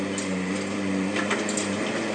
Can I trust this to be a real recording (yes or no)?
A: yes